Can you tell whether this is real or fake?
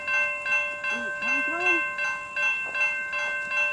real